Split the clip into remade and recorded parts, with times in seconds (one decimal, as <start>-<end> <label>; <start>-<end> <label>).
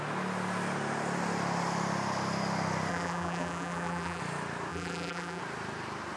0.0-2.9 recorded; 2.9-4.2 remade; 4.2-4.7 recorded; 4.7-5.4 remade; 5.4-6.2 recorded